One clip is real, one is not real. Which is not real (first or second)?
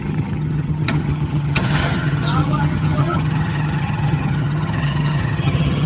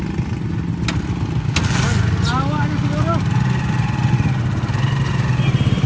first